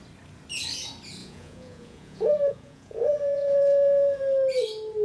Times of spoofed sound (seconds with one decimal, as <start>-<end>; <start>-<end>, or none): 1.2-4.2